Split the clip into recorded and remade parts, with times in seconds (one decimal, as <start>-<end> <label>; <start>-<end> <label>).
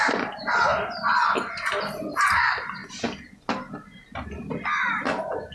0.0-5.5 recorded